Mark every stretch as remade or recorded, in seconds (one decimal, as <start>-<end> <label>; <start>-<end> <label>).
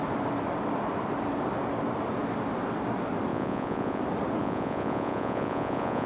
0.0-3.3 recorded; 3.3-4.0 remade; 4.0-4.4 recorded; 4.4-6.1 remade